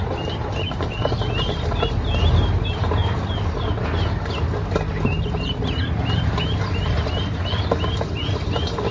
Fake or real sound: real